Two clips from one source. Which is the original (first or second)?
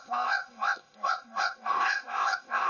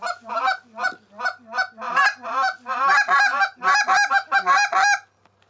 second